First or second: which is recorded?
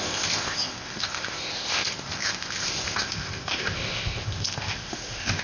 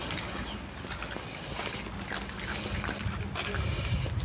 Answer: second